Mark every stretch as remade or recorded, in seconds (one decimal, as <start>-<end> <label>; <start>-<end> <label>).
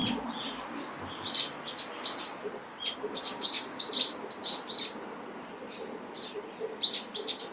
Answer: 0.0-3.1 recorded; 3.1-3.9 remade; 3.9-7.5 recorded